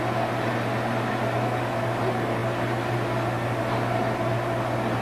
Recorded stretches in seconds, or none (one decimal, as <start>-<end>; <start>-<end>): 0.0-5.0